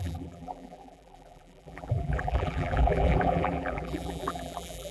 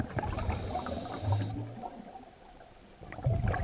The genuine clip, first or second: second